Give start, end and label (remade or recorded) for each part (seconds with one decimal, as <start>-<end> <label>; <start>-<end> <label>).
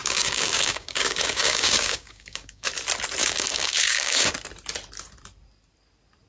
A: 0.0-2.7 remade; 2.7-3.2 recorded; 3.2-4.3 remade; 4.3-6.3 recorded